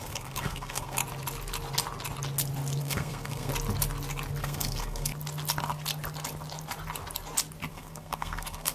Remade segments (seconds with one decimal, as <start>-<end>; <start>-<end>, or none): 0.0-1.0; 2.8-3.5; 4.4-5.1; 7.7-8.7